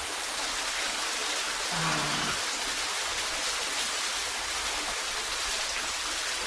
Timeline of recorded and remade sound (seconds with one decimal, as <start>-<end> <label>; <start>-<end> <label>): 0.0-6.5 recorded